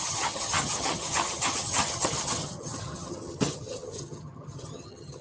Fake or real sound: fake